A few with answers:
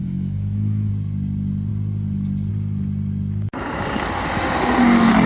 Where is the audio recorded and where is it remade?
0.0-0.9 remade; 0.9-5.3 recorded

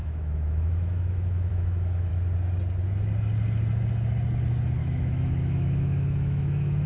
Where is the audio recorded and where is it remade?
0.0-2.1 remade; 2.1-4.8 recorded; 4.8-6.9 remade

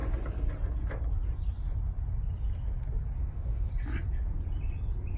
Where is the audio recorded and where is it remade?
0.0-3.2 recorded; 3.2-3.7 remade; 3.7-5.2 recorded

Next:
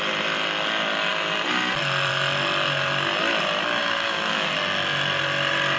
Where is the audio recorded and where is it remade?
0.0-3.8 recorded; 3.8-4.5 remade; 4.5-5.8 recorded

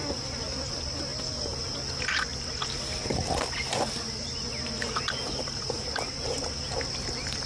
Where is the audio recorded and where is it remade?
0.0-7.5 recorded

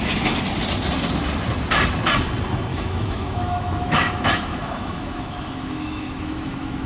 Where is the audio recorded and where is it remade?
0.0-2.7 recorded; 2.7-6.9 remade

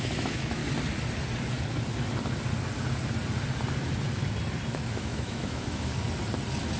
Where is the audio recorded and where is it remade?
0.0-0.6 remade; 0.6-4.7 recorded; 4.7-5.9 remade; 5.9-6.8 recorded

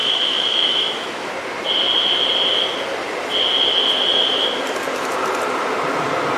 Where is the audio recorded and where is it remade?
0.0-1.3 remade; 1.3-6.4 recorded